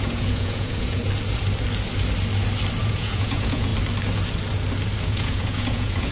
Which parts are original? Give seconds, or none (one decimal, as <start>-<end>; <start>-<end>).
1.0-2.8; 3.7-5.0